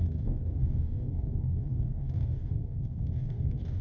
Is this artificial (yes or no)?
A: yes